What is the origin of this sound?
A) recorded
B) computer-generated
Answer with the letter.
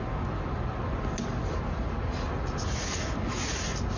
A